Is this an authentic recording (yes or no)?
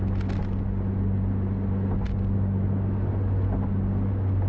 yes